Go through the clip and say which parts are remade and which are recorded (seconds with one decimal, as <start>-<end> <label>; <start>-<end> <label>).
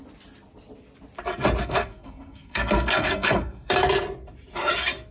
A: 0.0-1.6 recorded; 1.6-3.7 remade; 3.7-5.1 recorded